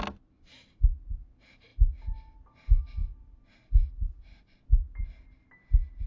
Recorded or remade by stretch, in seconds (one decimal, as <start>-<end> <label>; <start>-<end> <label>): 0.0-6.1 recorded